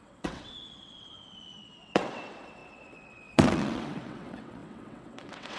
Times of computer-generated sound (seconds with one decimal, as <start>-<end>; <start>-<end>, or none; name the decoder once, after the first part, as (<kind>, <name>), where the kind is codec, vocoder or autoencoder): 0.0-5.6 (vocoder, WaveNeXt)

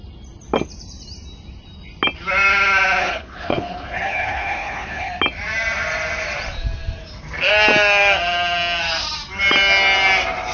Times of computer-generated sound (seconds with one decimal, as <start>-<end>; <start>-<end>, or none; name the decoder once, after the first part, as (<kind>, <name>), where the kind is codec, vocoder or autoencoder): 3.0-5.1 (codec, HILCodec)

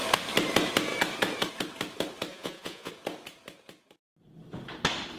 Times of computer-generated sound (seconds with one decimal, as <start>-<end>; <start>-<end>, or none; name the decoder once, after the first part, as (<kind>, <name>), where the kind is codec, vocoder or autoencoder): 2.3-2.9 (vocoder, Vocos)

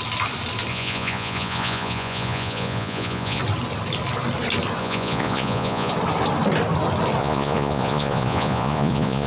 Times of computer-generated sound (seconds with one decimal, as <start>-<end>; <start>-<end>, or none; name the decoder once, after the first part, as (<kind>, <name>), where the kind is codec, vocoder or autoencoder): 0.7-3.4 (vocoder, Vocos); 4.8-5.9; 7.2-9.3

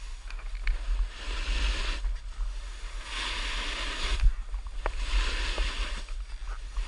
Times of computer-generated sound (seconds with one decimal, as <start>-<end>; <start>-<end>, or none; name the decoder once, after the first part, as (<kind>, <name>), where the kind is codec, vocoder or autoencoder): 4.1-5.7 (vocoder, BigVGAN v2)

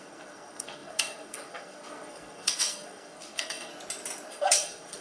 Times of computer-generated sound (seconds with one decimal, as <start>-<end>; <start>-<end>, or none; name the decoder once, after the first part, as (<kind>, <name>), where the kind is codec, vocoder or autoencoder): 0.0-3.7 (codec, SNAC); 4.3-5.0

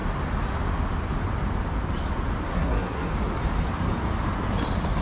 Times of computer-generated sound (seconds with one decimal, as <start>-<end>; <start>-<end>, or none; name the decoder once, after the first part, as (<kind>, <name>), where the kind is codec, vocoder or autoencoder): 2.5-3.1 (codec, SNAC)